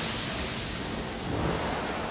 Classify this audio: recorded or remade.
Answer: recorded